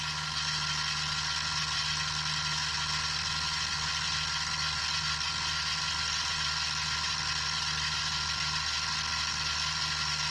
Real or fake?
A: real